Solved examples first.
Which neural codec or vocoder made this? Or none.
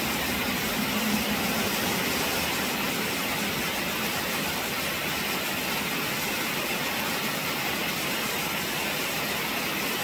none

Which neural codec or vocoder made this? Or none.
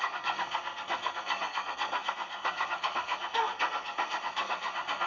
codec, SNAC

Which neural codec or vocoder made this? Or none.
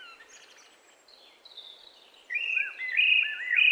none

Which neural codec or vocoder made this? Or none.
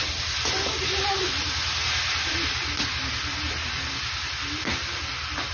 none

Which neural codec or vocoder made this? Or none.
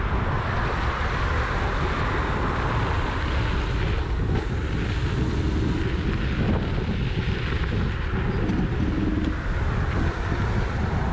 none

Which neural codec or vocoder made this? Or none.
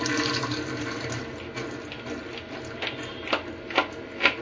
none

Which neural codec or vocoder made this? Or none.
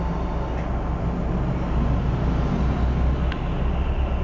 none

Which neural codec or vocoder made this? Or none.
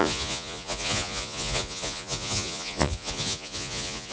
vocoder, Vocos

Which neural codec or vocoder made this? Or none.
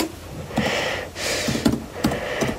none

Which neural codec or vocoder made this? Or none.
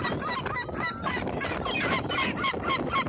none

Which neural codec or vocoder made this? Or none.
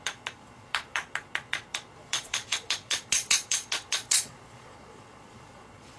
vocoder, Vocos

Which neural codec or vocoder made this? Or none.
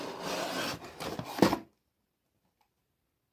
none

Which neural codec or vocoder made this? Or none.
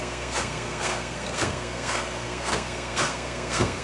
codec, SNAC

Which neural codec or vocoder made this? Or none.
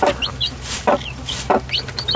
none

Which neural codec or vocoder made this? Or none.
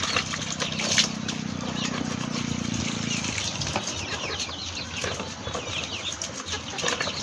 none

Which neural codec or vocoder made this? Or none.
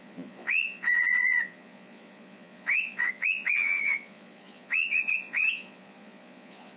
vocoder, Vocos